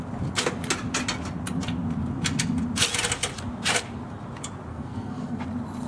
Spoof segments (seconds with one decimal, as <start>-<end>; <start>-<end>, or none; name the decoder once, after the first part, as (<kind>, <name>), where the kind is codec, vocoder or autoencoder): 4.7-5.4 (codec, SNAC)